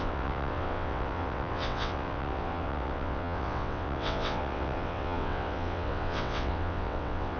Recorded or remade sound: remade